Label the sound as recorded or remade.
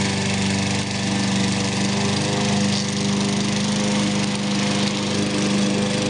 recorded